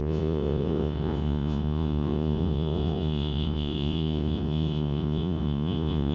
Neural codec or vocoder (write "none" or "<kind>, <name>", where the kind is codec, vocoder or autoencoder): vocoder, Vocos